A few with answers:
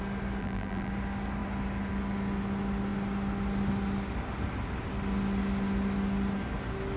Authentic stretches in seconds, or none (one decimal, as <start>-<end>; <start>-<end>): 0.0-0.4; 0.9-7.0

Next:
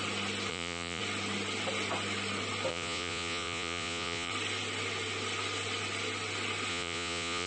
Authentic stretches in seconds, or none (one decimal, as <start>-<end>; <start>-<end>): 0.0-0.5; 1.0-2.7; 4.3-6.7

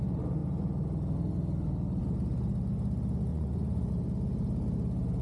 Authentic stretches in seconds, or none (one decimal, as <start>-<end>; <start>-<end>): 0.0-3.3; 3.9-5.2

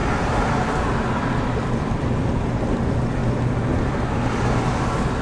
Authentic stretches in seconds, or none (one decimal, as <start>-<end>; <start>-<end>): 0.0-5.2

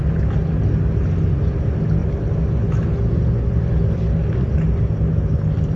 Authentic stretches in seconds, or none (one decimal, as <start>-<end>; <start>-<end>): 0.0-5.8

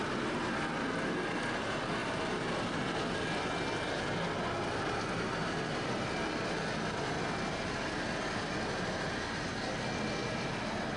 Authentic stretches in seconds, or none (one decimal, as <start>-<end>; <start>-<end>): 0.0-11.0